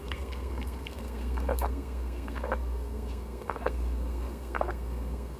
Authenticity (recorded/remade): remade